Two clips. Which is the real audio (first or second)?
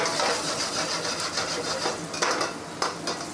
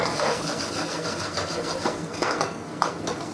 first